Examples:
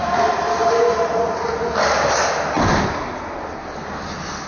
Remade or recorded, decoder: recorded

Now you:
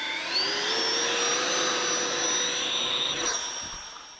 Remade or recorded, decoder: recorded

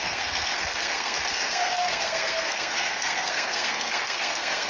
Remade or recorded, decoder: remade, codec, SNAC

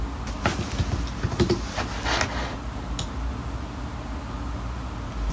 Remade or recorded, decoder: recorded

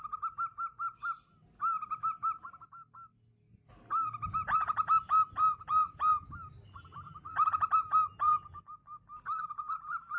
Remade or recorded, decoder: recorded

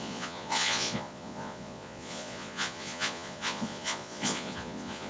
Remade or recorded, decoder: remade, vocoder, Vocos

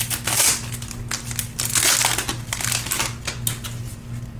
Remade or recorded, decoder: recorded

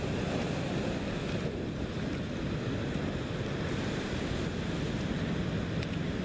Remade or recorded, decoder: recorded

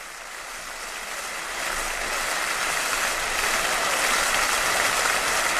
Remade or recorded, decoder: recorded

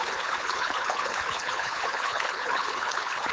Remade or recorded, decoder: remade, codec, HILCodec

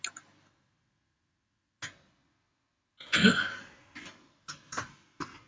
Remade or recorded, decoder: recorded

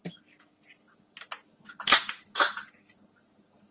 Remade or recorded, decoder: recorded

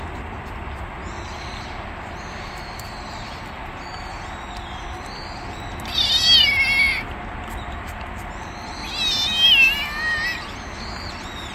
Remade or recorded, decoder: recorded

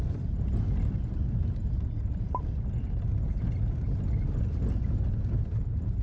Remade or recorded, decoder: recorded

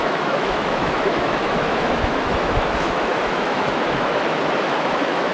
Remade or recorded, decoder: remade, autoencoder, DAC-VAE